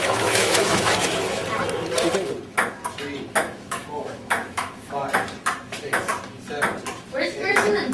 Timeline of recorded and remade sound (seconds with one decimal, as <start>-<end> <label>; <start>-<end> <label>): 0.0-1.4 remade; 1.4-3.4 recorded; 3.4-5.0 remade; 5.0-5.6 recorded; 5.6-6.1 remade; 6.1-7.2 recorded; 7.2-7.9 remade